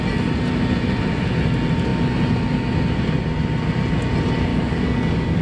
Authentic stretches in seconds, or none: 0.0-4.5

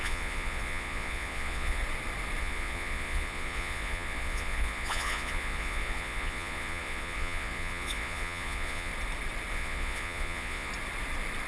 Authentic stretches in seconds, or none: 1.8-2.4; 8.9-9.5; 10.7-11.5

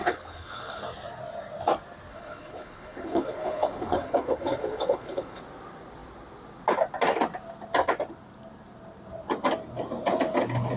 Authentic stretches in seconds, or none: 0.8-2.1; 5.4-10.8